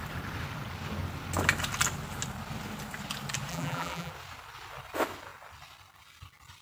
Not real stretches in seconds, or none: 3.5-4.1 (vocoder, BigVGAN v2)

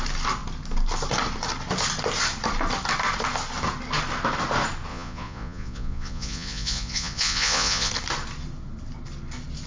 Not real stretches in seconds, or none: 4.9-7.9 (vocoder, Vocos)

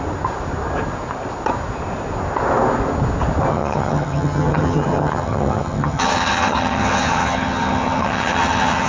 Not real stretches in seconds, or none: 3.5-8.9 (vocoder, HiFi-GAN)

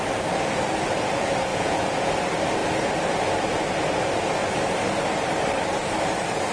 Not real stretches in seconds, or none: 1.5-2.1 (vocoder, Vocos)